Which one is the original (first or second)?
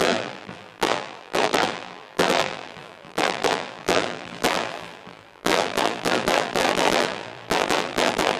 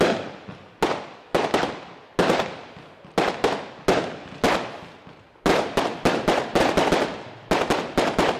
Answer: second